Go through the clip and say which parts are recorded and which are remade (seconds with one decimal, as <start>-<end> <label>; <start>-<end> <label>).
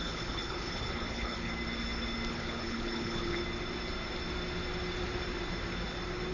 0.0-1.5 remade; 1.5-2.3 recorded; 2.3-3.4 remade; 3.4-6.3 recorded